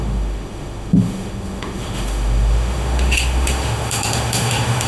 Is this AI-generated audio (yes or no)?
yes